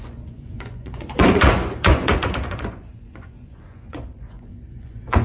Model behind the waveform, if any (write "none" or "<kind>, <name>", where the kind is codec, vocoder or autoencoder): vocoder, Vocos